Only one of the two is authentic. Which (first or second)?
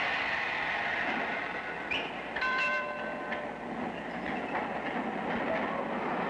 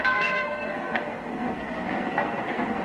first